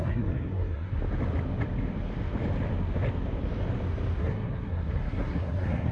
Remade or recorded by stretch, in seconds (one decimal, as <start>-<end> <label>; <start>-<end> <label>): 0.0-1.0 remade; 1.0-4.2 recorded; 4.2-5.9 remade